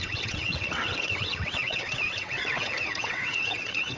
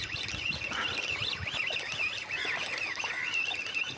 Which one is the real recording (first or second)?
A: second